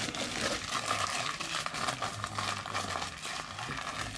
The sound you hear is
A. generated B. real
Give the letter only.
B